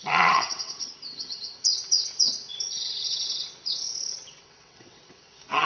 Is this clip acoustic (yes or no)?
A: no